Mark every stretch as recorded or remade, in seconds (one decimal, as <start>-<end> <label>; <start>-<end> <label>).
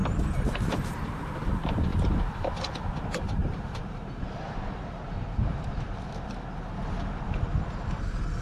0.0-0.7 remade; 0.7-3.4 recorded; 3.4-6.3 remade; 6.3-8.4 recorded